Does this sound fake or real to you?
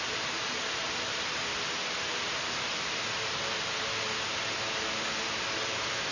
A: real